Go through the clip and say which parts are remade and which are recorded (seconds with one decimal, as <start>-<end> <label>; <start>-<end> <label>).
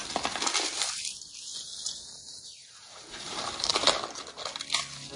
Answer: 0.0-2.6 recorded; 2.6-4.0 remade; 4.0-5.2 recorded